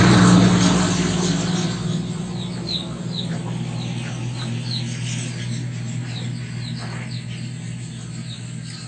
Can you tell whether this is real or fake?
real